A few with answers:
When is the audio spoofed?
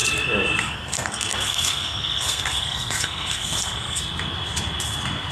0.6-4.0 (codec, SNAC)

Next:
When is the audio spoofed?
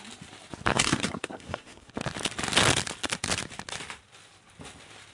0.7-1.9 (codec, SNAC)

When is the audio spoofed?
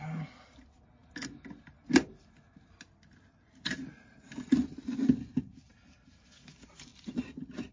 none